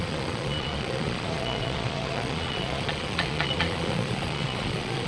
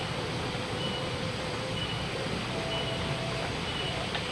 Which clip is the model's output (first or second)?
first